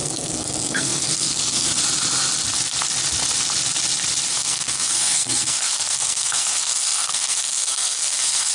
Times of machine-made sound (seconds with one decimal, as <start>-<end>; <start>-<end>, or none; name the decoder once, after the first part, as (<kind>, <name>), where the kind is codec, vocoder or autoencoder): 0.0-1.8 (codec, SNAC); 4.3-8.5